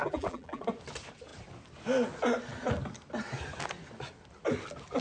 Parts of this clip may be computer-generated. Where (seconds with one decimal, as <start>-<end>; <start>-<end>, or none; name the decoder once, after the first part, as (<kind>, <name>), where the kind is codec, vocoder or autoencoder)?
0.0-0.6 (vocoder, BigVGAN v2)

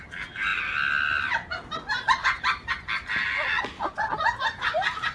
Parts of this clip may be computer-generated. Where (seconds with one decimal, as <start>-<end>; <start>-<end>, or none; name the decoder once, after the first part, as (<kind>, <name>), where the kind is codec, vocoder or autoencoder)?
none

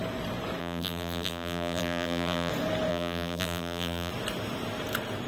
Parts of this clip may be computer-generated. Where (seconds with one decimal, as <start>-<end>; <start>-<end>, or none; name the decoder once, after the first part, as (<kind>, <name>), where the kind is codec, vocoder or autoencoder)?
0.6-2.5 (vocoder, BigVGAN v2); 2.9-4.1

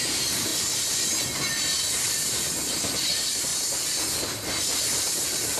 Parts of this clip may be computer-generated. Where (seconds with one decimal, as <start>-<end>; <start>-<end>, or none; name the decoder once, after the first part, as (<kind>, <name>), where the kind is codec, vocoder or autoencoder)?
0.0-0.5 (vocoder, BigVGAN v2); 1.9-3.5; 4.6-5.6